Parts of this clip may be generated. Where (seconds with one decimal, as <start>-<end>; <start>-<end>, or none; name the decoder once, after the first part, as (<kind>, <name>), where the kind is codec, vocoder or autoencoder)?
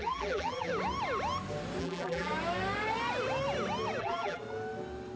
0.0-0.7 (vocoder, BigVGAN v2); 1.8-2.3; 4.0-4.4